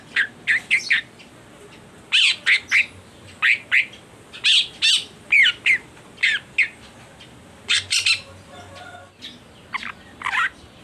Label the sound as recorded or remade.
recorded